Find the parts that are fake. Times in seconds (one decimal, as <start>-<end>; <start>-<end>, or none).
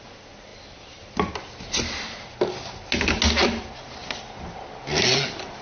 0.5-1.3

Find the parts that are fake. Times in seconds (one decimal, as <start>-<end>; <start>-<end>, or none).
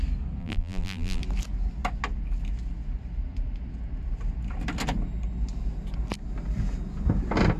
0.4-1.2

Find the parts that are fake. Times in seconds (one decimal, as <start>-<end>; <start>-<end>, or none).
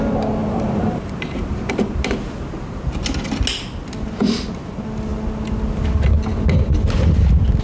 0.4-1.9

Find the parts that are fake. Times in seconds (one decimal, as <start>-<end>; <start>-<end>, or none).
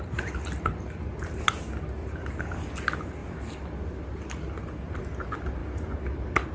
2.0-2.6; 3.2-4.5; 5.6-6.5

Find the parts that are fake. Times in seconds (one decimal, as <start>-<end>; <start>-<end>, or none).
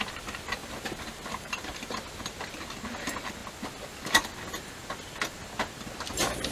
0.6-2.4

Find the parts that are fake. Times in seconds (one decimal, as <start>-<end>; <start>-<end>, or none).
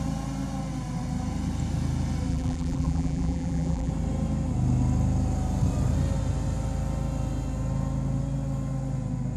2.3-3.9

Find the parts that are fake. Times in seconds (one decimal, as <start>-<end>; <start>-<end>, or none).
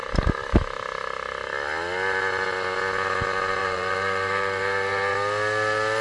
3.6-5.1